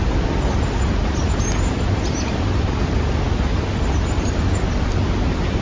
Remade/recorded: recorded